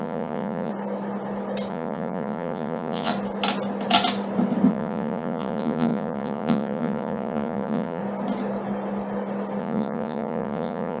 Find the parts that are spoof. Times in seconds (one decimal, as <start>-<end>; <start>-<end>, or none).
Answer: 0.0-0.7; 1.7-3.1; 4.7-8.0; 9.6-11.0